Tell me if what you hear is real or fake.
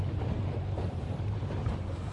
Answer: fake